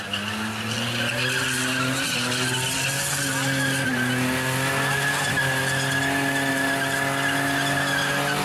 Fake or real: real